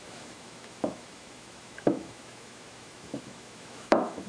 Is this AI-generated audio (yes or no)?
yes